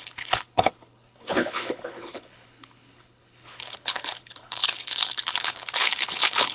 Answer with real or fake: fake